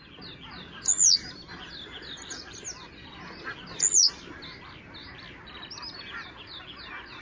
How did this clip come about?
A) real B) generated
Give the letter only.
A